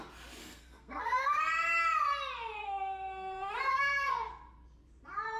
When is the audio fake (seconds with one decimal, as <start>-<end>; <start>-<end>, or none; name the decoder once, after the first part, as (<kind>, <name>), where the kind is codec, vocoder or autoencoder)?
0.4-1.4 (codec, SNAC); 2.6-4.3